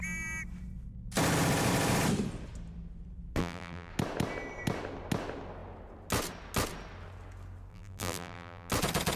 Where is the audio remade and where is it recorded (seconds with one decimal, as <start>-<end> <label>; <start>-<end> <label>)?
0.0-3.4 recorded; 3.4-3.9 remade; 3.9-7.7 recorded; 7.7-8.7 remade; 8.7-9.2 recorded